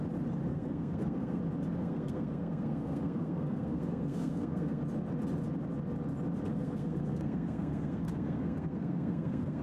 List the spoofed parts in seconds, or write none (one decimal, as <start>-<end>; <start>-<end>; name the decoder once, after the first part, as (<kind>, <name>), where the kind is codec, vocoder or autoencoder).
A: 0.5-1.4 (codec, SNAC); 1.8-4.8; 6.5-9.6